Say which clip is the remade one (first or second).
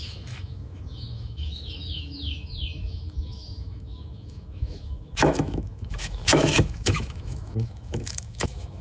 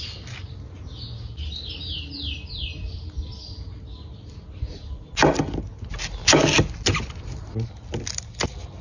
first